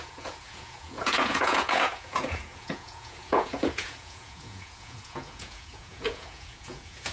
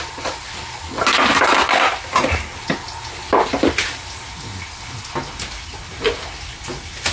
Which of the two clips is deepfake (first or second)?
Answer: first